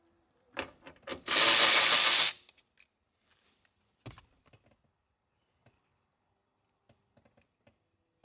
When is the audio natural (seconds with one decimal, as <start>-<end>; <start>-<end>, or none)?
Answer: 0.0-8.2